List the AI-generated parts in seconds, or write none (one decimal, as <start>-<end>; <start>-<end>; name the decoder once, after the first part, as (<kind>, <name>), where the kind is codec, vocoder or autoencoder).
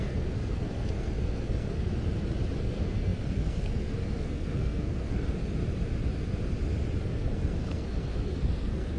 0.0-1.9 (codec, SNAC); 2.6-5.4; 7.0-9.0